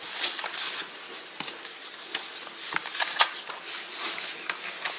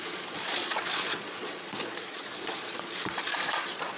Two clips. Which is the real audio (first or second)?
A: first